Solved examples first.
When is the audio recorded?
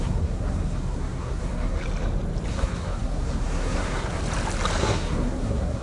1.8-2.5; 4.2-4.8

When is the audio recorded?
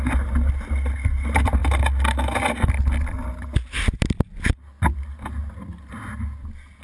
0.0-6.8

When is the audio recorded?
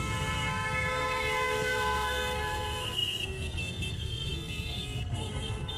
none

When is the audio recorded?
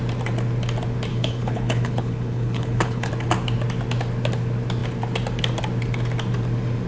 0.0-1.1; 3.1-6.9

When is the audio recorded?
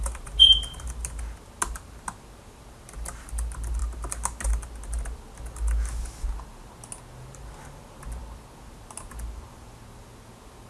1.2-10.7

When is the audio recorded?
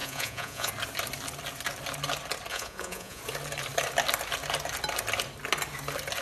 0.7-2.5; 3.2-6.2